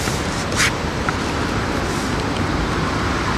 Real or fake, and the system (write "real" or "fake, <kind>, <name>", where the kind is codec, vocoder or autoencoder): fake, vocoder, BigVGAN v2